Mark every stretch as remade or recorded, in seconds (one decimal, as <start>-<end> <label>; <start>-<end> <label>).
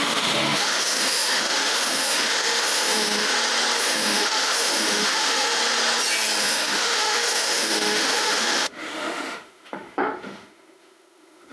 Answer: 0.0-3.3 remade; 3.3-3.8 recorded; 3.8-5.6 remade; 5.6-6.4 recorded; 6.4-11.5 remade